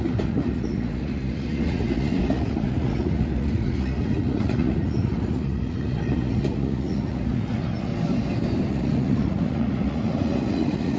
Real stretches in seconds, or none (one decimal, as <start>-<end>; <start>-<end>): 7.9-8.7